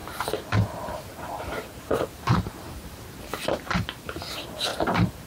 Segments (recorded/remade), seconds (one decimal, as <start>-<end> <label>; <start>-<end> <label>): 0.0-3.2 remade; 3.2-4.7 recorded; 4.7-5.3 remade